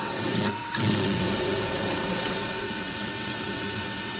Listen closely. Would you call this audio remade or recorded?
remade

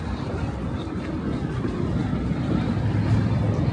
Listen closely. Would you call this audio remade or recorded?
recorded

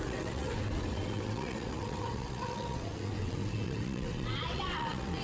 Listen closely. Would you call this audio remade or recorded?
remade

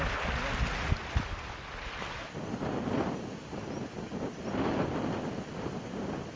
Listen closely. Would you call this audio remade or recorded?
recorded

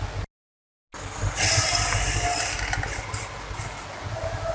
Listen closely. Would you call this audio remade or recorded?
recorded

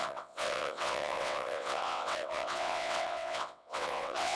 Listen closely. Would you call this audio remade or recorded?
remade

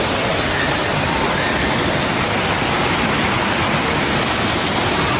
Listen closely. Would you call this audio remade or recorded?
recorded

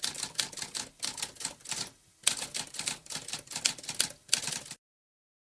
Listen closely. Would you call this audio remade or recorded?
recorded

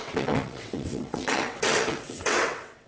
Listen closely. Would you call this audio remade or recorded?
remade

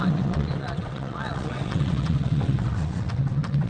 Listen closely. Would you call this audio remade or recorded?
remade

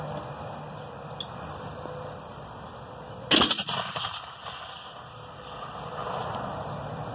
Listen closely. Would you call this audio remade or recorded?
recorded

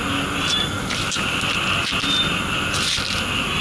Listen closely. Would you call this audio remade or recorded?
recorded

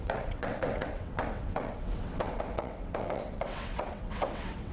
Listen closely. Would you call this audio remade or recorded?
remade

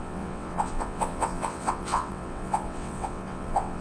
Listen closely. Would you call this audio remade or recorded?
remade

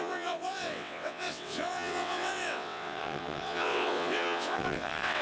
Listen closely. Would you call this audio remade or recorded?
remade